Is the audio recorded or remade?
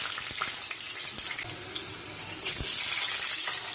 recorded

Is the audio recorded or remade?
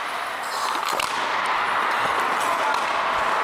recorded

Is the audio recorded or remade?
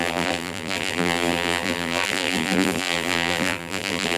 remade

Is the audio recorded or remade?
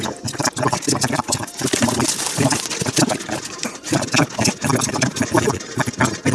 recorded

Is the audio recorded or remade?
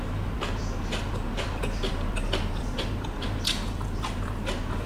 recorded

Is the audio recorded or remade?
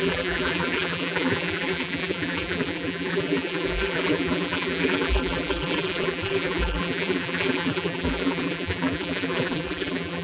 remade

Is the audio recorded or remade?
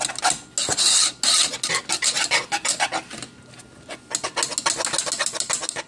recorded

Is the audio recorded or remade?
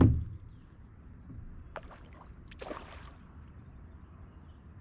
recorded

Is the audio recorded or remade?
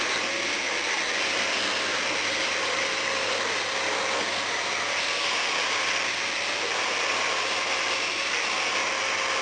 remade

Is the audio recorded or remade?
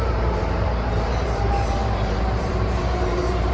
remade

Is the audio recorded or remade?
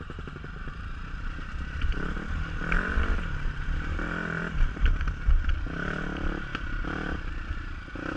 remade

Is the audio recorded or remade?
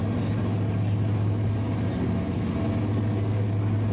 recorded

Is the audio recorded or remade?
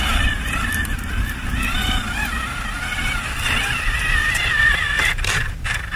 remade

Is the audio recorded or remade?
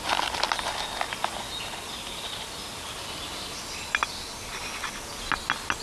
recorded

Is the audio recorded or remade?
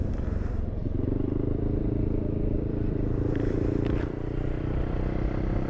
remade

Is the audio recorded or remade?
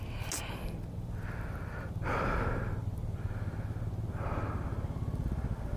recorded